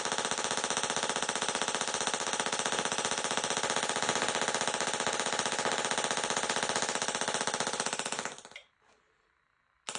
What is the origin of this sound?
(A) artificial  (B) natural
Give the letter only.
B